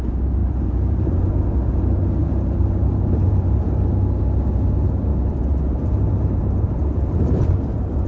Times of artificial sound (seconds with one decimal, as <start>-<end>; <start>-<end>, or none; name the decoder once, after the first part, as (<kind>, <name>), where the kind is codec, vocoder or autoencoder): 0.4-1.2 (vocoder, BigVGAN v2); 2.2-3.9; 5.1-8.1